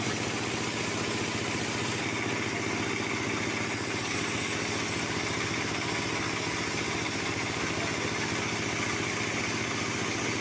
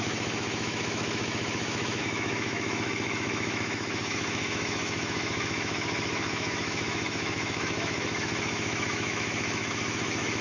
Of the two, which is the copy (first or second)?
second